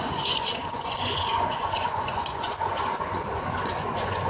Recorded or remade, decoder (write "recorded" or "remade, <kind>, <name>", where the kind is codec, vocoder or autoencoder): remade, vocoder, Vocos